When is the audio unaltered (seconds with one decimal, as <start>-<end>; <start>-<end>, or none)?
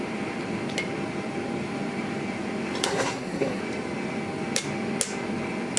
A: 0.0-2.8; 3.6-5.8